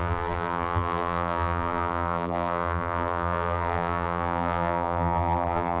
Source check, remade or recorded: remade